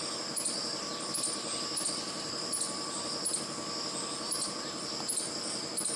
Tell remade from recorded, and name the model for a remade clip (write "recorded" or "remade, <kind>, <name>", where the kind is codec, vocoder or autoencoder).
recorded